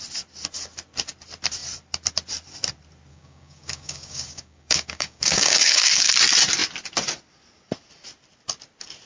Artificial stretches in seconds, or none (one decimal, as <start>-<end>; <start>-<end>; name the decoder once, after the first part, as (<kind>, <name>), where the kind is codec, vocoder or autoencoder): 3.1-6.1 (codec, DAC)